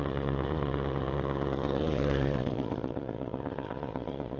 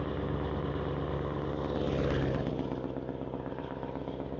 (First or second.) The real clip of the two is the second